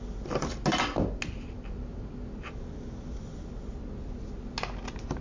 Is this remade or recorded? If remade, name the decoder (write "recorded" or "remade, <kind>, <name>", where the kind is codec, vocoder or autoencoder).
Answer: recorded